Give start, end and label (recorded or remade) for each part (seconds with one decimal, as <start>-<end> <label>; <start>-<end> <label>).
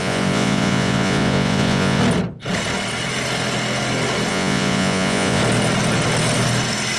0.0-2.0 remade; 2.0-4.3 recorded; 4.3-5.4 remade; 5.4-7.0 recorded